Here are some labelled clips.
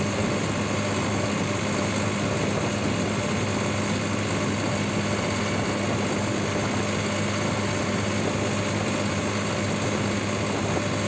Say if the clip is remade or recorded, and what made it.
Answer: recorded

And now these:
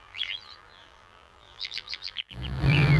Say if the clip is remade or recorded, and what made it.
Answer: remade, vocoder, BigVGAN v2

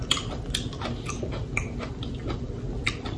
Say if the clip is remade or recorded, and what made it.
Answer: recorded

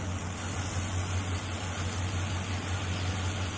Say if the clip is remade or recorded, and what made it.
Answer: recorded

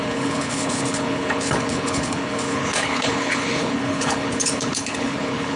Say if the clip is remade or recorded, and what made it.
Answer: remade, codec, HILCodec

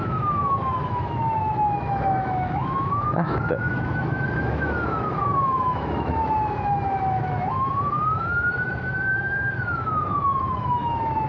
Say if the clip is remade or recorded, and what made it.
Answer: remade, autoencoder, DAC-VAE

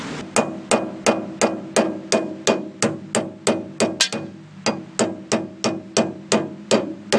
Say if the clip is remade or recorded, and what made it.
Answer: recorded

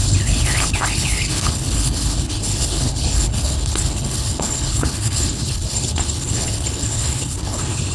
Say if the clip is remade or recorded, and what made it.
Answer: remade, codec, HILCodec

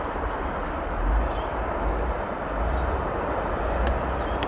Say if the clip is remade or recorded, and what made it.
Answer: recorded